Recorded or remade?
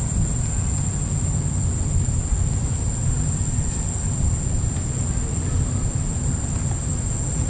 recorded